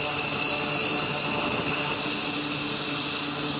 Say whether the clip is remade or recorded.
recorded